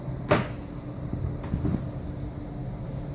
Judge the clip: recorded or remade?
recorded